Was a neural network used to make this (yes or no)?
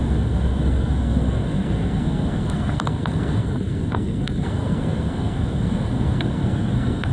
yes